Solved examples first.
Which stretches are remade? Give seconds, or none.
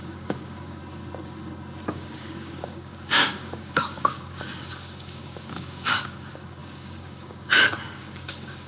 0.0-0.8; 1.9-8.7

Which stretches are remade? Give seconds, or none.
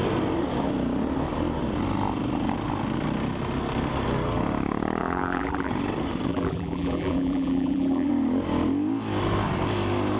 5.0-5.7; 6.3-8.1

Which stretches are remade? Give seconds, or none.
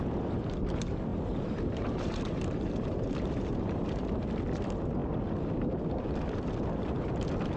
1.1-4.2